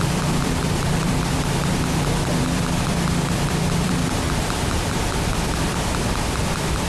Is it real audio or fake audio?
fake